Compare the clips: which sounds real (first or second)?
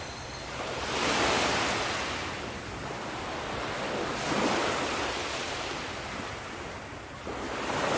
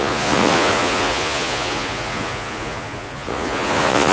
first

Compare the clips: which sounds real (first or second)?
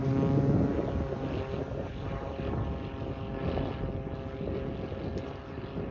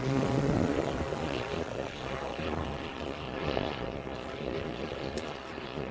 first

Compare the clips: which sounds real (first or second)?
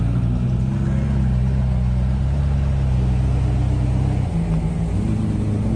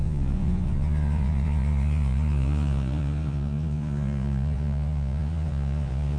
first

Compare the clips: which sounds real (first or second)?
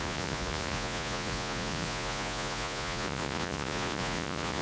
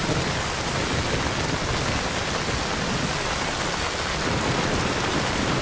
second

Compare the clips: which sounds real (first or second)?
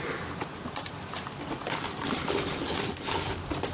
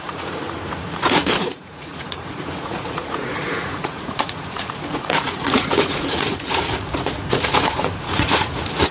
first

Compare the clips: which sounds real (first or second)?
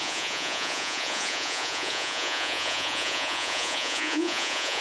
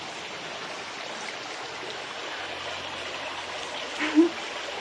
second